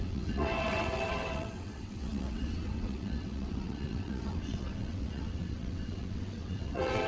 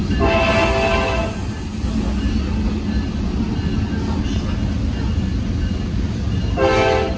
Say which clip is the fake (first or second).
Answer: first